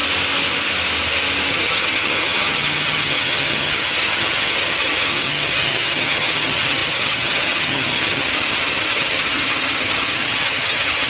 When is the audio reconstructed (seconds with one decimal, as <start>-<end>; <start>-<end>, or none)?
1.5-11.1